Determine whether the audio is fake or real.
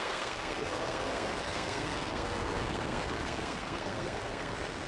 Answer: fake